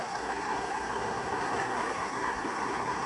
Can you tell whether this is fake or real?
fake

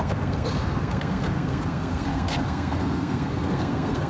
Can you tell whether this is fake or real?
fake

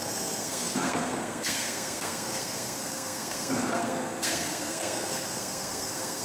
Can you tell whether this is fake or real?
fake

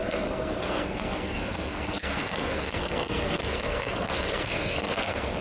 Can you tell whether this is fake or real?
fake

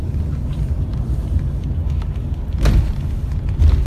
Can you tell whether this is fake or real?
real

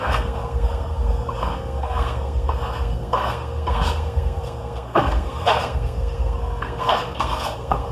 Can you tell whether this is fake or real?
fake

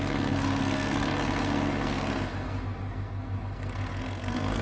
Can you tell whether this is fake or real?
fake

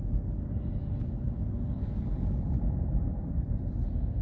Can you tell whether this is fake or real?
real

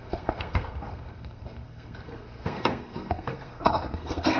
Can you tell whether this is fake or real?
fake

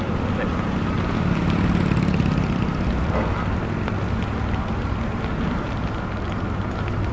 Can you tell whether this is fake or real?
real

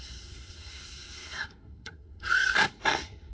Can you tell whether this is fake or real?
fake